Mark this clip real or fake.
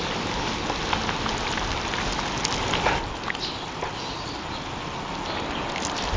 real